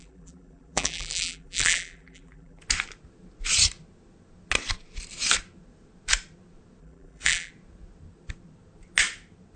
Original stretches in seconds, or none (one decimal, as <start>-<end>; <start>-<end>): 2.6-6.8; 7.5-9.6

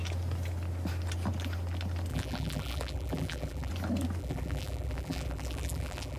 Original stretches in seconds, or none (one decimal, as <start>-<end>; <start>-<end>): 0.0-2.1; 3.7-4.2

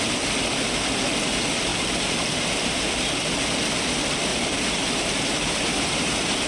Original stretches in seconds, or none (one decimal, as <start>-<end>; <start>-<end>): 0.0-1.7; 2.8-4.3; 4.9-6.5

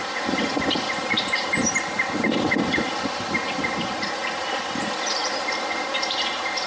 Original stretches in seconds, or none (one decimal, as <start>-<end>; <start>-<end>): none

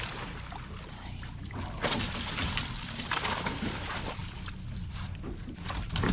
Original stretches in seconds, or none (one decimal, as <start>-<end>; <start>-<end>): 4.2-4.7

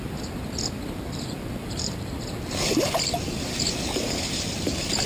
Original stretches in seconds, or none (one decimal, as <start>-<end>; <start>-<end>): 0.0-1.6; 2.1-5.1

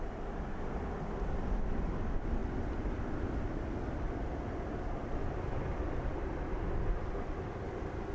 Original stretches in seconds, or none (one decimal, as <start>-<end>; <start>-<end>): 0.0-8.1